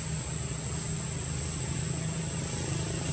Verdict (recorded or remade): recorded